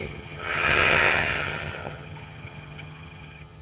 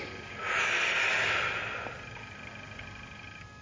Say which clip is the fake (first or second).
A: first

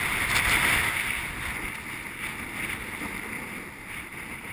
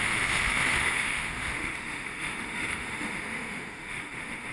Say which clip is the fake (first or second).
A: second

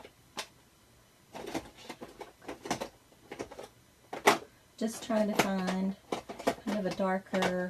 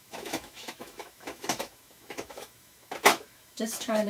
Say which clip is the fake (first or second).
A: second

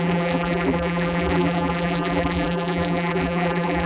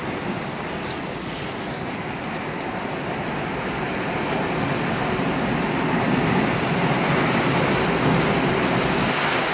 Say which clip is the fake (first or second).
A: first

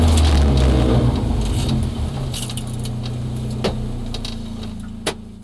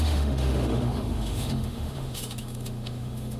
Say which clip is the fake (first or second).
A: second